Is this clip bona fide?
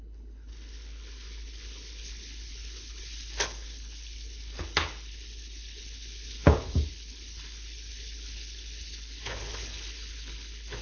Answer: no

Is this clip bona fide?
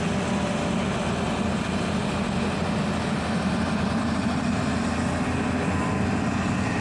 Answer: yes